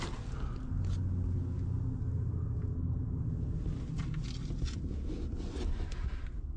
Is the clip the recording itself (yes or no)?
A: yes